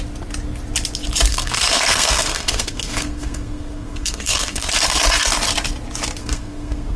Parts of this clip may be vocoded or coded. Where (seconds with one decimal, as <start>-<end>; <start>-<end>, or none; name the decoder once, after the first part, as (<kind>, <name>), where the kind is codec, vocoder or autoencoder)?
1.3-4.7 (codec, SNAC); 6.2-7.0